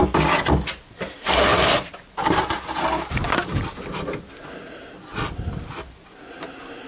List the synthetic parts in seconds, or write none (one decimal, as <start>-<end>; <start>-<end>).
none